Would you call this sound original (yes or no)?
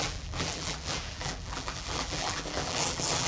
no